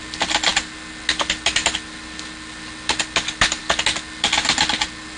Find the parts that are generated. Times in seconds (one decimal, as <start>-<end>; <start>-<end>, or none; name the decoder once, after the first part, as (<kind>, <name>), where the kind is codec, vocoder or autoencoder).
none